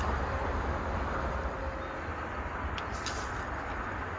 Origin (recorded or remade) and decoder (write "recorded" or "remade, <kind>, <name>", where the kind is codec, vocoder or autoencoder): recorded